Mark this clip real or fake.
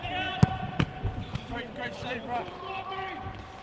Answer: real